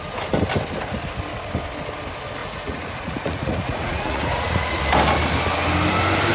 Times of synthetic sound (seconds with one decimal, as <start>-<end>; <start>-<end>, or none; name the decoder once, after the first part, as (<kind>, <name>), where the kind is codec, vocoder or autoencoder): 2.4-4.8 (vocoder, Vocos)